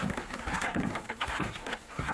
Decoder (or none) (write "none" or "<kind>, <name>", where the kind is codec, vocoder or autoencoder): codec, SNAC